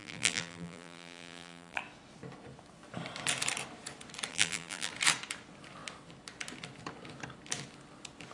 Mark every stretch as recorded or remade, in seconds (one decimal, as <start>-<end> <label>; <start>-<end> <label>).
0.0-1.8 remade; 1.8-4.3 recorded; 4.3-4.9 remade; 4.9-8.3 recorded